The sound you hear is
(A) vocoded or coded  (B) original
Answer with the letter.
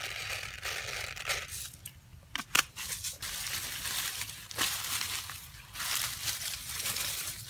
B